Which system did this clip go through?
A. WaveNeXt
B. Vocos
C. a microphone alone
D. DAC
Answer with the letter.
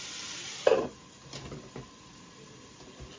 C